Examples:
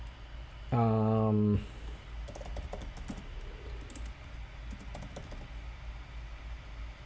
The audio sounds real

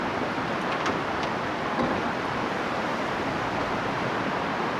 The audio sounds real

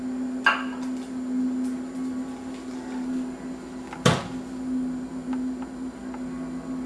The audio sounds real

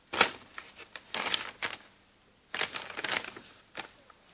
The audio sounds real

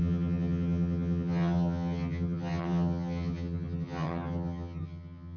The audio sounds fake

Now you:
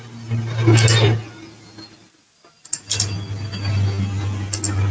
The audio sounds real